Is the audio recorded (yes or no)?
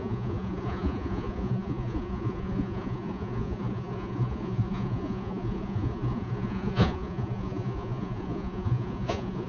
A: no